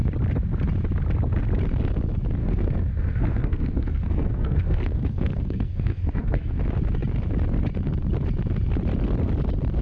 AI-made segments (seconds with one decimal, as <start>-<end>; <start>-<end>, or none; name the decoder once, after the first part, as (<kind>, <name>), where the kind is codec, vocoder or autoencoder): 2.4-6.6 (codec, SNAC)